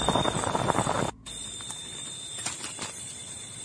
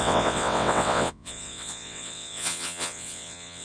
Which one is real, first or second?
first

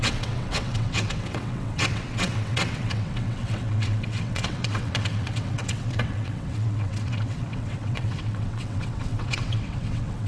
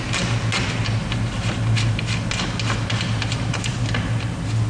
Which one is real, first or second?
second